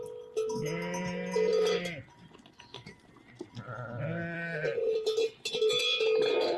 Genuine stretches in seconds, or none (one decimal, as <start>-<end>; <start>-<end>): 0.0-6.6